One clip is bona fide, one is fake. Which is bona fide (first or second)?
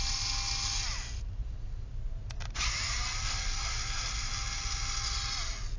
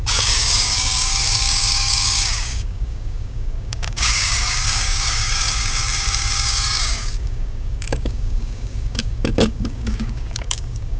first